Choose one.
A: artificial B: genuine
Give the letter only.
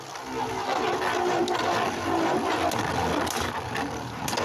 B